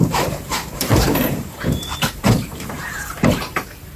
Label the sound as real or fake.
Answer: fake